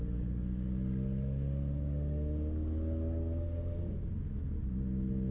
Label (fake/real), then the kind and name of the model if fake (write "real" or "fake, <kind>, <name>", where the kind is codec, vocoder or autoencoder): real